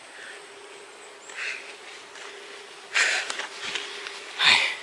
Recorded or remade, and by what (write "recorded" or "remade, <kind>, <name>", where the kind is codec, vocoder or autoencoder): recorded